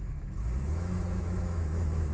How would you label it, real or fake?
fake